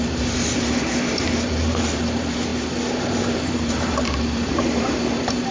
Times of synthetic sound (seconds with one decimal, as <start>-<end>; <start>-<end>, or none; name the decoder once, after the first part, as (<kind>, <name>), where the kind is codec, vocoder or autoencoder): 0.0-5.5 (vocoder, BigVGAN v2)

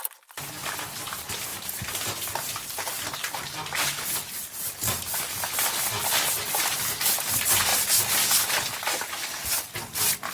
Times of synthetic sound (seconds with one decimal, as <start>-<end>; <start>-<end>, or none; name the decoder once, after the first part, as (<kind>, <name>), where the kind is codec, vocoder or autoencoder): 1.5-5.5 (vocoder, BigVGAN v2); 7.7-8.6

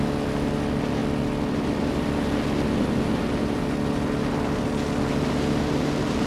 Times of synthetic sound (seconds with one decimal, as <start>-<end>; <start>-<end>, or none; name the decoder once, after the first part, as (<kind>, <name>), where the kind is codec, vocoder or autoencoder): none

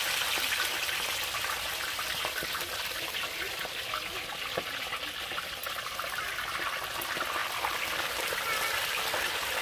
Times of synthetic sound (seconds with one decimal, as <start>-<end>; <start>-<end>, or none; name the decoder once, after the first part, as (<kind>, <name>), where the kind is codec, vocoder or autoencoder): none